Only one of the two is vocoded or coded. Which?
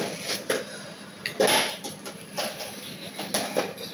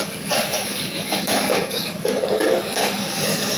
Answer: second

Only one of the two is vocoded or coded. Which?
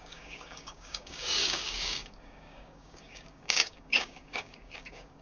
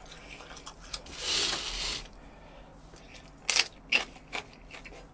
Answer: first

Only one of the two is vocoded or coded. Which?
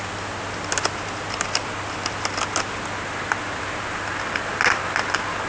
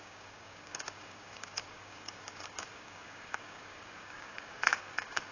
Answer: second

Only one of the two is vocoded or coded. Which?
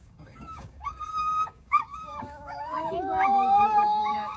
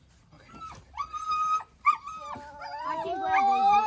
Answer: first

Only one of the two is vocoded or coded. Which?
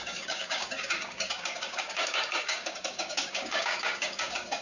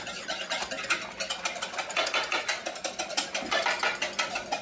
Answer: first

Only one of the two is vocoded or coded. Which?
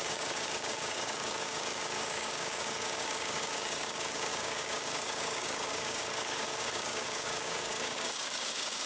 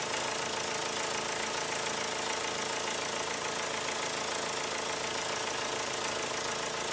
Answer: first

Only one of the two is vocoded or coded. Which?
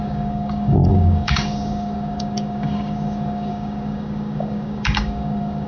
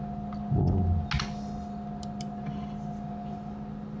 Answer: first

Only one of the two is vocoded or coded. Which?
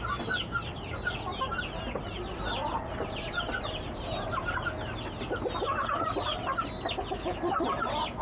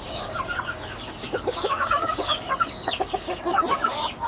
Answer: second